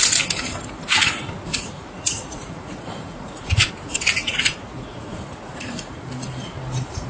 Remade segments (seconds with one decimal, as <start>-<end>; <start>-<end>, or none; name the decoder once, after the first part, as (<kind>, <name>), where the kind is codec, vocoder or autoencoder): 1.5-3.7 (vocoder, Vocos); 4.2-6.1